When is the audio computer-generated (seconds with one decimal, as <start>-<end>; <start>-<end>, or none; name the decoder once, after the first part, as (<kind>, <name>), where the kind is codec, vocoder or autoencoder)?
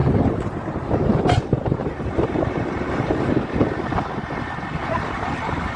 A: 0.0-3.3 (vocoder, BigVGAN v2); 4.8-5.8